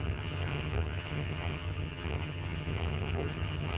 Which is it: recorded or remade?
remade